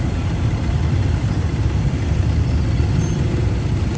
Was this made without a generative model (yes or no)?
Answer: yes